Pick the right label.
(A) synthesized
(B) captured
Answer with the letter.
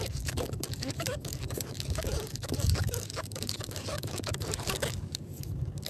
A